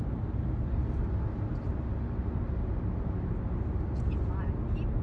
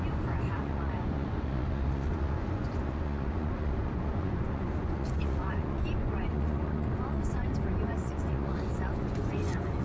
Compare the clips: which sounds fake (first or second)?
second